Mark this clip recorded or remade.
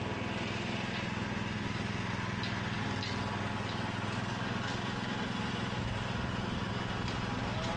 recorded